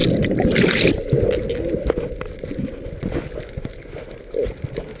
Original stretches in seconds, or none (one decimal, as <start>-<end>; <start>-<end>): 0.0-5.0